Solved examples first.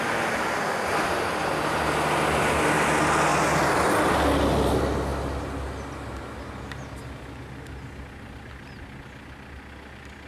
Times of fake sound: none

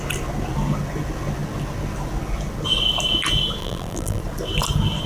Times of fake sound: 3.6-4.2 (vocoder, BigVGAN v2)

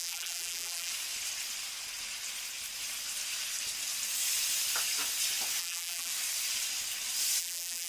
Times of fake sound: 0.0-0.9 (vocoder, BigVGAN v2); 5.6-6.1; 7.4-7.9

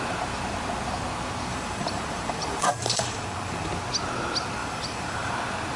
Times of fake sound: 1.5-3.7 (vocoder, BigVGAN v2); 4.6-5.3